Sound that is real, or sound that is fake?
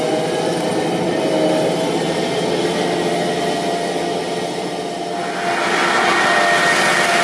real